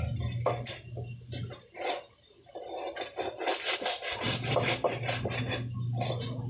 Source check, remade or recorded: recorded